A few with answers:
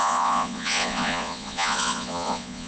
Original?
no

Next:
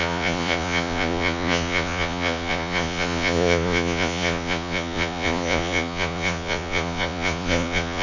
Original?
no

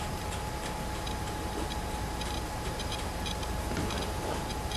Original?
no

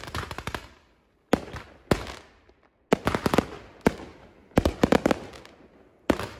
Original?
yes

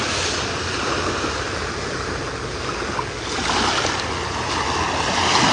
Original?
yes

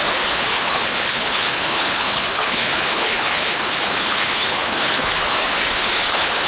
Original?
no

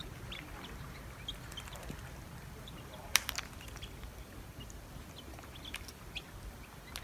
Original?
no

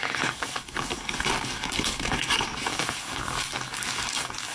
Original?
no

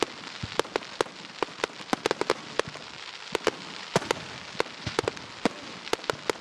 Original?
yes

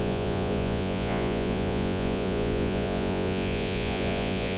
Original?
no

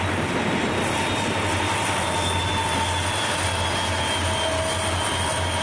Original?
yes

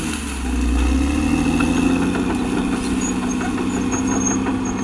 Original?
yes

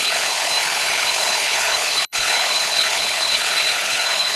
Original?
no